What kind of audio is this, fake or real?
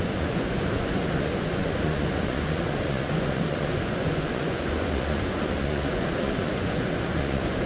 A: fake